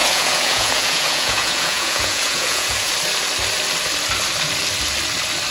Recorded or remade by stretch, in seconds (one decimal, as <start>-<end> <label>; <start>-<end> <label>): 0.0-2.9 remade; 2.9-5.5 recorded